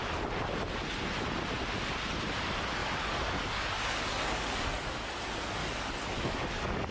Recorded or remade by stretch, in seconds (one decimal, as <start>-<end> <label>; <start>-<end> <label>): 0.0-2.8 recorded; 2.8-5.1 remade; 5.1-5.6 recorded; 5.6-6.9 remade